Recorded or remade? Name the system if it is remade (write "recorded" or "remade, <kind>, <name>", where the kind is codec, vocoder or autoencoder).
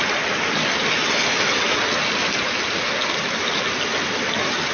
recorded